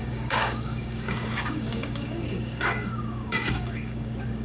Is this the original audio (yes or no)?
no